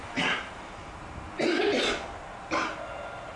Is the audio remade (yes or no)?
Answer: no